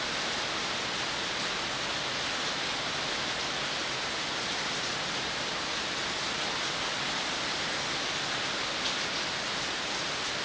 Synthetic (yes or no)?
no